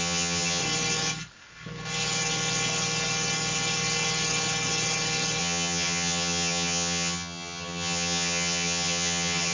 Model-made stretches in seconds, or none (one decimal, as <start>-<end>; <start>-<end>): 0.0-0.6; 5.4-9.5

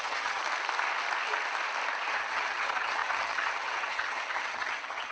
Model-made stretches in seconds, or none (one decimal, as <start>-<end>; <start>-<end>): 0.0-0.4; 2.1-5.1

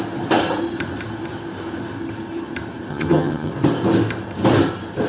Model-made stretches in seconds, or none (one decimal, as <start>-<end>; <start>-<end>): 2.9-3.5